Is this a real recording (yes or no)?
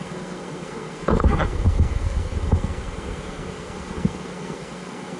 no